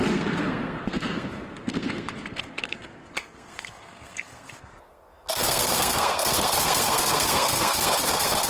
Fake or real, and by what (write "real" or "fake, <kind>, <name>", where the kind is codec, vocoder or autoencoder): fake, codec, SNAC